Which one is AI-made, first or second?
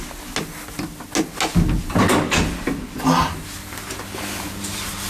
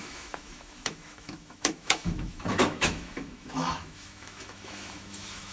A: second